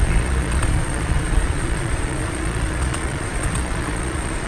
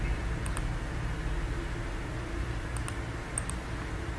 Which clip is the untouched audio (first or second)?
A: second